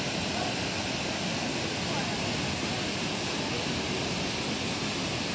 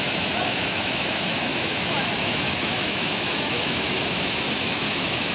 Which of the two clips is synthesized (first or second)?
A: second